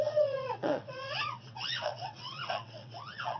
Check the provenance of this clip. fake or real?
fake